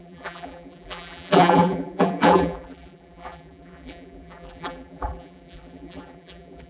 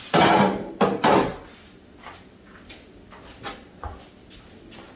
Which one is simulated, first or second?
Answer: first